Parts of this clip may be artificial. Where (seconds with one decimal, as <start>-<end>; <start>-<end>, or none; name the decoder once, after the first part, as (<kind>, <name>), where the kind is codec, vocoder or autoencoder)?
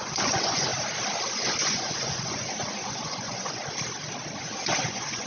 0.0-0.7 (vocoder, Vocos); 1.3-3.6; 4.4-5.3